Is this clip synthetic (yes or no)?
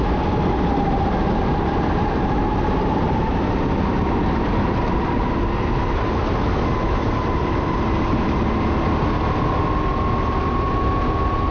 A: no